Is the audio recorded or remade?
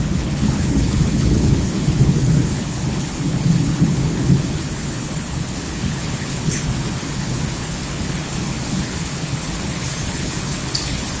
remade